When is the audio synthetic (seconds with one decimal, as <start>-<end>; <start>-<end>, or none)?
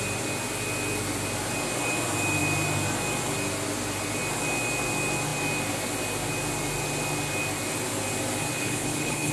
8.5-9.3